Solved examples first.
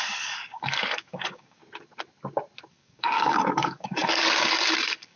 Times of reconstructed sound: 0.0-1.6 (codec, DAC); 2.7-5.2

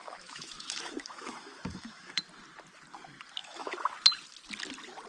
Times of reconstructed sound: 0.0-2.2 (autoencoder, DAC-VAE); 3.4-3.9

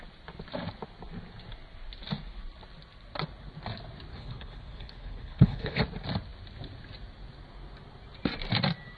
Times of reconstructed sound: 4.1-5.8 (codec, HILCodec)

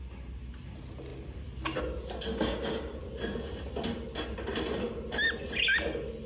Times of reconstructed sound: 2.3-3.0 (codec, DAC)

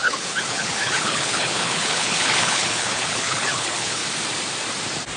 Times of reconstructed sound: 0.0-4.0 (codec, HILCodec)

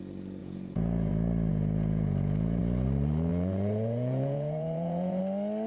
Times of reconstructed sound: 0.4-1.1 (vocoder, Vocos); 1.5-2.6; 3.3-5.2